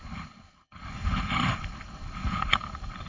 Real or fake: fake